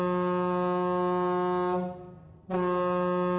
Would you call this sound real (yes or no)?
yes